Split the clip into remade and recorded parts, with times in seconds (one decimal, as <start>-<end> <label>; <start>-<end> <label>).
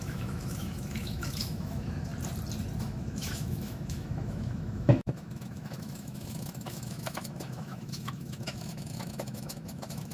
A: 0.0-2.1 remade; 2.1-2.8 recorded; 2.8-10.1 remade